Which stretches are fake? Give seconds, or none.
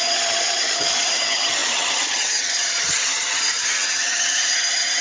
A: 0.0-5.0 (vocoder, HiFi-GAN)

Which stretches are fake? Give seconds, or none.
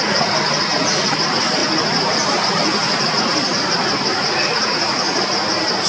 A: 4.1-5.2 (vocoder, Vocos)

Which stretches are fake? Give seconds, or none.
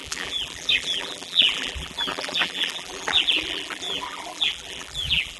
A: 0.0-5.4 (vocoder, BigVGAN v2)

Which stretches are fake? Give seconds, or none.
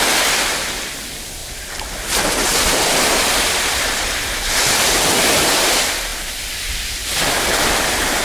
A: 1.4-4.5 (vocoder, BigVGAN v2)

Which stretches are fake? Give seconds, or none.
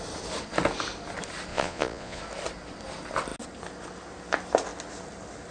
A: 1.5-2.2 (vocoder, Vocos)